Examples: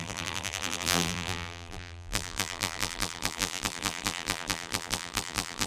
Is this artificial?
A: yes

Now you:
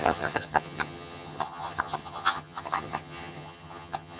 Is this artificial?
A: yes